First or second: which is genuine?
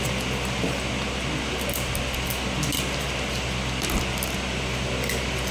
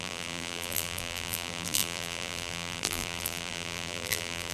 first